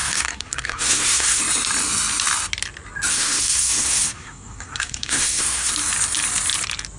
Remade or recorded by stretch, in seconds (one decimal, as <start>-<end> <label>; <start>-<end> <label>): 0.0-1.4 remade; 1.4-3.1 recorded; 3.1-5.7 remade; 5.7-7.0 recorded